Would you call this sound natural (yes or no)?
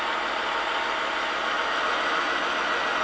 yes